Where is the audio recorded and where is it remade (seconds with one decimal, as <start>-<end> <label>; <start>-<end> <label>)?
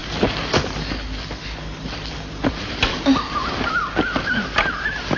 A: 0.0-5.2 recorded